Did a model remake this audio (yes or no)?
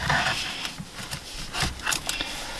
no